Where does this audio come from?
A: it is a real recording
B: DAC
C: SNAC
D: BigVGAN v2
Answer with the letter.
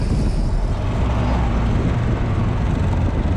A